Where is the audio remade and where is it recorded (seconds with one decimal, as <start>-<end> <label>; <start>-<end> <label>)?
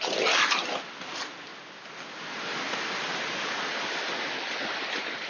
0.0-5.3 recorded